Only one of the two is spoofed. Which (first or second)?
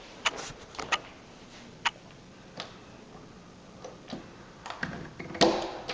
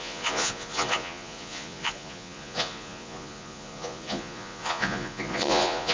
second